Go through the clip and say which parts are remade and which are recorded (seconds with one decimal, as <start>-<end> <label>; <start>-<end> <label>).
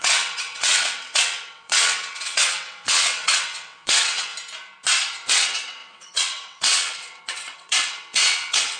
0.0-4.3 remade; 4.3-5.3 recorded; 5.3-8.8 remade